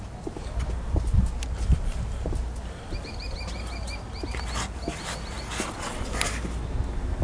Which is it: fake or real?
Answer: real